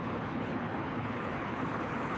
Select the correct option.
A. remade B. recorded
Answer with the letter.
A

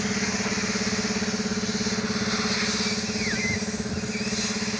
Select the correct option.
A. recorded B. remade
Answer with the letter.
A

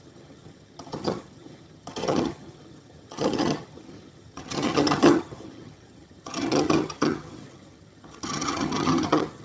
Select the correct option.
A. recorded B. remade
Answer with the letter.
B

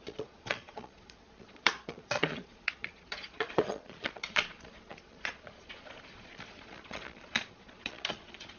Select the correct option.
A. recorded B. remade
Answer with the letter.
B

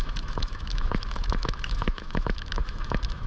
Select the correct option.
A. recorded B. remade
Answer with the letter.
B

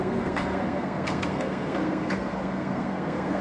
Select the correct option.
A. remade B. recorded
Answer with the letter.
A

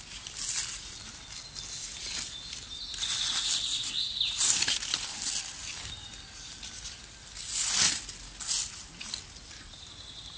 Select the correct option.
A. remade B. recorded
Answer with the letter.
B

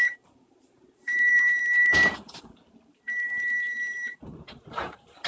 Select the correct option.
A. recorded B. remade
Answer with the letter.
B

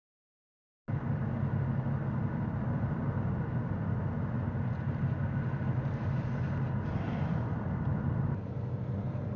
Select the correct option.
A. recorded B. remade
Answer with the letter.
A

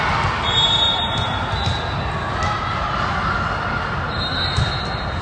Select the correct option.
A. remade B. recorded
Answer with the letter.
B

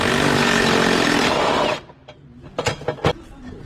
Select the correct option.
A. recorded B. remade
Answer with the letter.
A